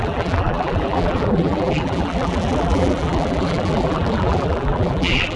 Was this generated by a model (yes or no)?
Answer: yes